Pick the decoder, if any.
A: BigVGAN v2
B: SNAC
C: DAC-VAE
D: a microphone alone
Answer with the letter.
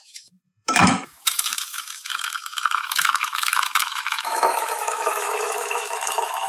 C